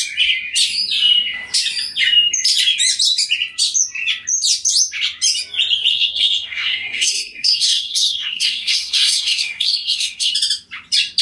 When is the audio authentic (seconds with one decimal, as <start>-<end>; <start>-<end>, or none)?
0.0-5.9; 10.3-11.2

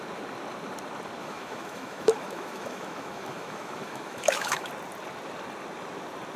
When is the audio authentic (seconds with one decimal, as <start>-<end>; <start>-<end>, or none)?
0.0-1.2; 4.7-6.4

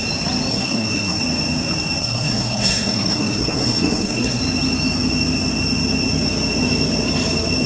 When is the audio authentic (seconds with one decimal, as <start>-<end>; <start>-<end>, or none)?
0.0-0.5; 1.2-2.0; 4.4-7.7

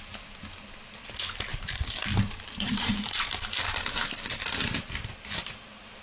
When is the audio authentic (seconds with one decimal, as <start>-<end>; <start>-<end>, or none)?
0.0-1.5; 4.1-6.0

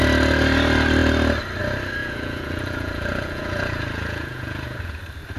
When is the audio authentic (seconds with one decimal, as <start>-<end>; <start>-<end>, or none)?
0.0-2.0; 5.0-5.4

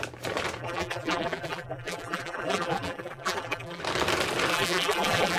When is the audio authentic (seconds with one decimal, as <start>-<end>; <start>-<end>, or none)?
0.0-0.6; 3.8-4.5

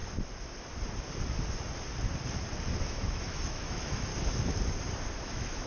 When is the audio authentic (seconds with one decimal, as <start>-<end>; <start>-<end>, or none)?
0.0-2.8; 4.1-5.2

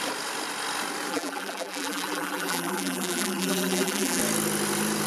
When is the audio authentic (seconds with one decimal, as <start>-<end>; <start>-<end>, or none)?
0.0-1.1; 4.2-5.1